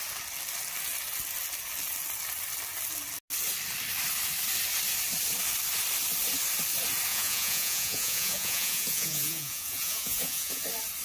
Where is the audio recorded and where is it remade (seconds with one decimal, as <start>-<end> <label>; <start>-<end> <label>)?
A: 0.0-7.1 recorded; 7.1-10.6 remade; 10.6-11.0 recorded